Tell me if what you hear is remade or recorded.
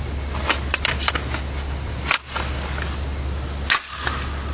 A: recorded